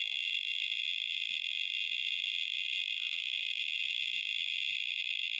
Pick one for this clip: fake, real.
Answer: fake